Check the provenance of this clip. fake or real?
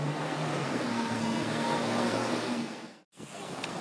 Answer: fake